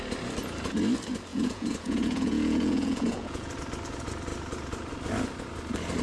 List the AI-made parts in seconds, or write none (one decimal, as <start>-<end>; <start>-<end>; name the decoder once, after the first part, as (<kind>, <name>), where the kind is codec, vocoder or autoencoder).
1.3-3.5 (vocoder, Vocos)